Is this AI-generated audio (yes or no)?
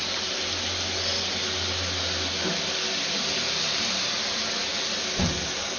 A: no